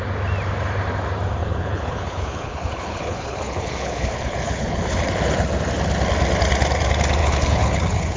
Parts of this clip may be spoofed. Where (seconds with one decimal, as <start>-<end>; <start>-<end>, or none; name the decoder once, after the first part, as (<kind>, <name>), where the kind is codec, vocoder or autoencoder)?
1.4-5.1 (codec, HILCodec); 7.2-8.2